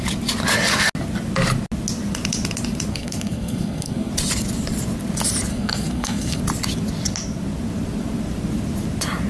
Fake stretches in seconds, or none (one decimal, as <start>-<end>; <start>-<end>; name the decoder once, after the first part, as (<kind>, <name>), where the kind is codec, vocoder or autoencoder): 2.9-4.1 (codec, SNAC); 5.5-6.4